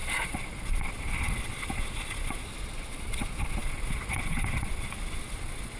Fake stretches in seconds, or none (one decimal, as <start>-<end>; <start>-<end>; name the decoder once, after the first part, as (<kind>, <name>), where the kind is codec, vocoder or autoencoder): 0.0-5.8 (vocoder, Vocos)